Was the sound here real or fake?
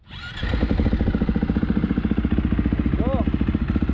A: real